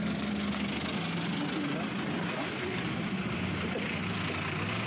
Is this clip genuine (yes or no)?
yes